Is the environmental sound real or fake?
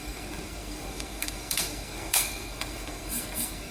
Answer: fake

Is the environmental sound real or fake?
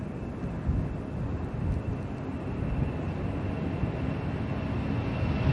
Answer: real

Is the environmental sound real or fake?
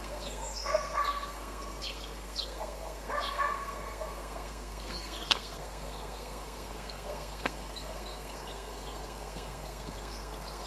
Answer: fake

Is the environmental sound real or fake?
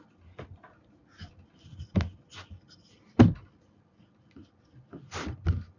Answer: real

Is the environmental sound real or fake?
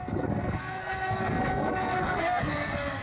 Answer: fake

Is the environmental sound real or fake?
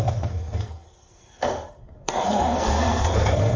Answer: fake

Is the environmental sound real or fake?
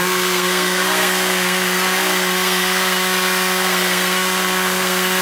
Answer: fake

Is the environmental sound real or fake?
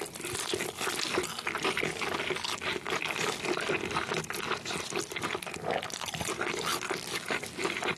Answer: real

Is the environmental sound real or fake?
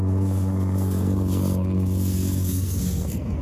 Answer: fake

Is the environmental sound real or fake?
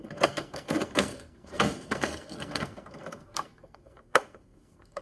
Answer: fake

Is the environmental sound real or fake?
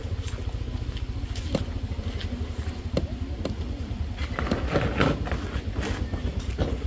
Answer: real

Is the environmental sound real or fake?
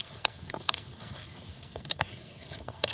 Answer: fake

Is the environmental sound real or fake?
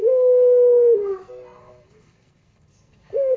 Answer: fake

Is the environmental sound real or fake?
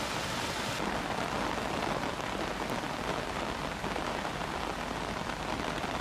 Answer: real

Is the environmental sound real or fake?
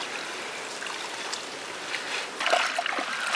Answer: real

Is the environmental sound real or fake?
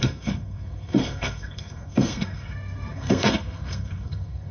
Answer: fake